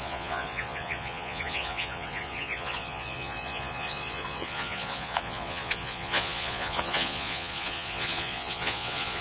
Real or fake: fake